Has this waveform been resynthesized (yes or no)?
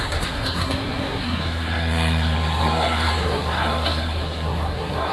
yes